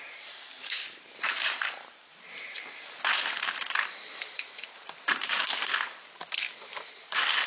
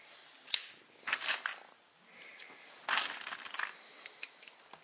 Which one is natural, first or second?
second